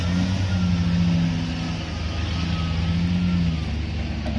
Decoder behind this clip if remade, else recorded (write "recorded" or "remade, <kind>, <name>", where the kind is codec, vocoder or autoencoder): recorded